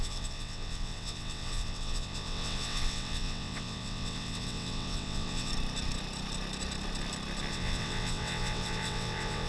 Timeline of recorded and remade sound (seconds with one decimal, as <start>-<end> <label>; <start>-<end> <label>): 0.0-5.5 remade; 5.5-7.5 recorded; 7.5-9.5 remade